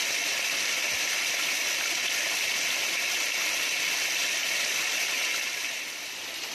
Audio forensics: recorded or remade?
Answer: recorded